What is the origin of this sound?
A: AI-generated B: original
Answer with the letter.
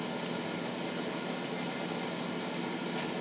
B